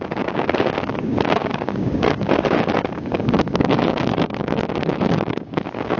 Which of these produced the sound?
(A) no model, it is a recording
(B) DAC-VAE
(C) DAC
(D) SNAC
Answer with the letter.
C